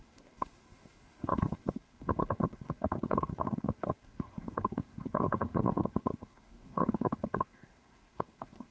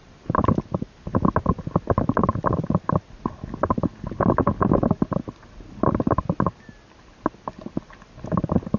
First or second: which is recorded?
second